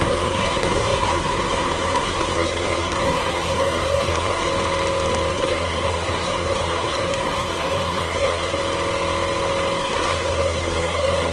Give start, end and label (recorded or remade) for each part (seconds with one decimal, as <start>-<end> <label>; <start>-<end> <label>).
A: 0.0-4.5 remade; 4.5-5.3 recorded; 5.3-8.6 remade; 8.6-9.8 recorded; 9.8-11.3 remade